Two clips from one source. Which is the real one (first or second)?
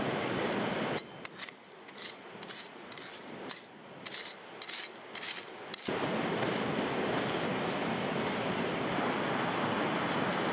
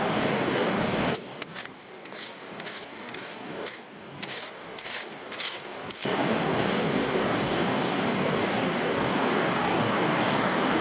first